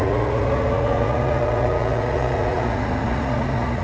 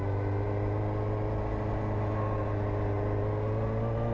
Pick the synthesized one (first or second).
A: first